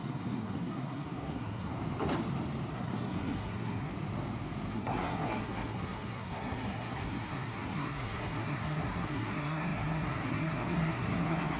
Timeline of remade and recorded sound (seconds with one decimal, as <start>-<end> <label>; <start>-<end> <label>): 0.0-1.7 remade; 1.7-2.7 recorded; 2.7-3.9 remade; 3.9-4.7 recorded; 4.7-11.6 remade